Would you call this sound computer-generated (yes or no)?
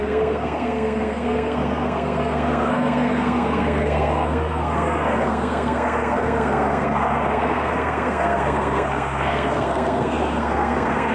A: yes